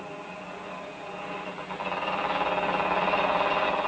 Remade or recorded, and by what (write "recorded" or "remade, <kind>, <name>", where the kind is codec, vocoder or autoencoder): recorded